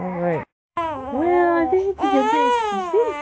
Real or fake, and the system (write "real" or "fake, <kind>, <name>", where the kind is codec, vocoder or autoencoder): fake, autoencoder, DAC-VAE